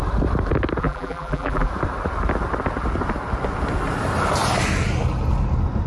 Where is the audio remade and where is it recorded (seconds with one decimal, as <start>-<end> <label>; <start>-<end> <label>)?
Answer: 0.0-0.8 recorded; 0.8-1.7 remade; 1.7-5.9 recorded